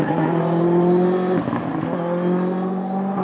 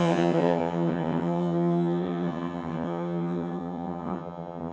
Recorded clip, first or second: first